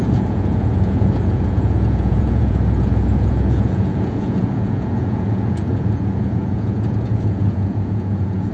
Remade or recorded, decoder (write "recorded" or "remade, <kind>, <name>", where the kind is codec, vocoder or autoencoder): remade, vocoder, Vocos